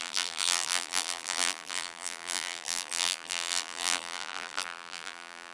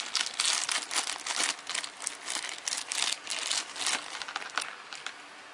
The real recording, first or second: second